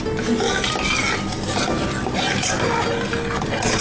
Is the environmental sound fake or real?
real